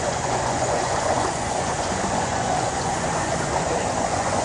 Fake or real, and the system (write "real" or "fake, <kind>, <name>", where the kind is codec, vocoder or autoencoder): fake, vocoder, Vocos